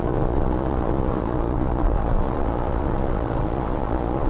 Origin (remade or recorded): remade